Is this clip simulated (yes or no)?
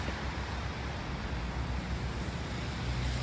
no